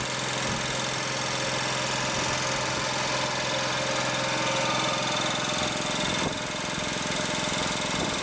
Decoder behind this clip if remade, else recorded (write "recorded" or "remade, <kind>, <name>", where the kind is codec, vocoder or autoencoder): recorded